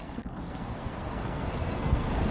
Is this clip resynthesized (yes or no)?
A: yes